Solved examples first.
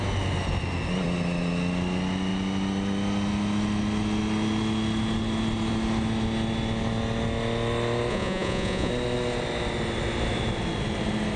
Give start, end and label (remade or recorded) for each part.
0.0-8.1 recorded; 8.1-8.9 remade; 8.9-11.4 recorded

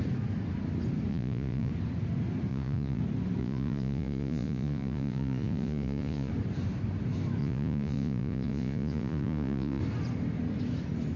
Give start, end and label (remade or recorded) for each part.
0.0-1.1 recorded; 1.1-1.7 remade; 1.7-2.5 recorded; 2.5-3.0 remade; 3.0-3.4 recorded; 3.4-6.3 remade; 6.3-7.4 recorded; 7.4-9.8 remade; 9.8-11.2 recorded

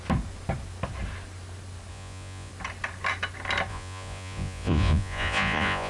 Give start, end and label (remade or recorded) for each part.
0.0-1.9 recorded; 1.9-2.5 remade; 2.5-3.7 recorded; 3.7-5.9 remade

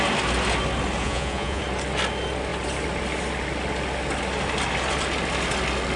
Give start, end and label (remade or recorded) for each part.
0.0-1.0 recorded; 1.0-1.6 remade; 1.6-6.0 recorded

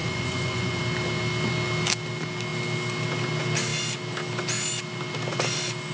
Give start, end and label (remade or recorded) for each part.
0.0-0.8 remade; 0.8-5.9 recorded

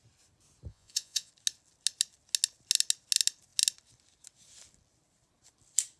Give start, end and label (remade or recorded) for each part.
0.0-0.7 recorded; 0.7-1.3 remade; 1.3-6.0 recorded

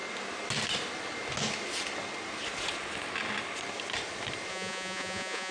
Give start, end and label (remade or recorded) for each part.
0.0-4.5 recorded; 4.5-5.5 remade

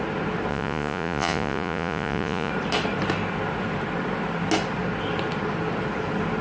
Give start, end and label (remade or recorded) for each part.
0.0-0.5 recorded; 0.5-2.5 remade; 2.5-6.4 recorded